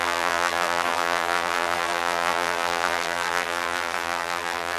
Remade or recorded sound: remade